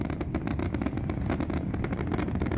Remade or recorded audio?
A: remade